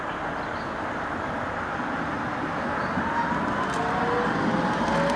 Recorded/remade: recorded